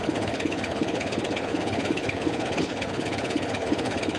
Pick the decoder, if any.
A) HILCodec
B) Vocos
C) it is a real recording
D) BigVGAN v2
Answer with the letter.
A